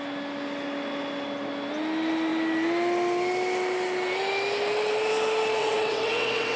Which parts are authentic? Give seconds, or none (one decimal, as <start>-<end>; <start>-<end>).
0.0-5.6